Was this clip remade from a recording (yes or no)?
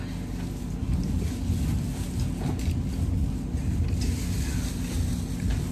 no